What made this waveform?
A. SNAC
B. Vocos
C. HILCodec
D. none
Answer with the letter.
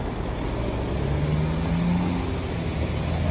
D